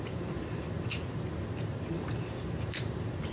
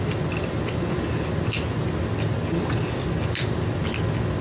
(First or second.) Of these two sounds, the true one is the second